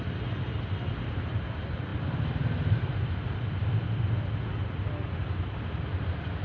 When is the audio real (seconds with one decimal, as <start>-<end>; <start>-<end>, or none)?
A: 0.0-1.9; 4.0-6.4